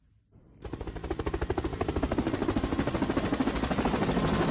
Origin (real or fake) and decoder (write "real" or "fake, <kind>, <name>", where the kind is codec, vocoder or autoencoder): real